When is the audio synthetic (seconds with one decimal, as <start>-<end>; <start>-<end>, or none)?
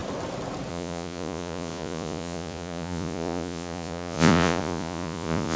0.7-5.6